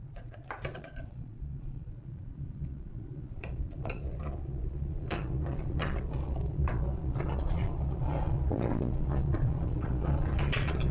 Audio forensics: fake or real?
fake